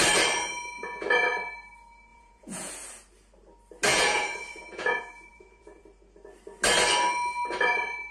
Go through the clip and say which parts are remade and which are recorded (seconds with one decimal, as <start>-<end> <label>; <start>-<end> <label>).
0.0-2.1 recorded; 2.1-2.7 remade; 2.7-3.9 recorded; 3.9-5.8 remade; 5.8-8.1 recorded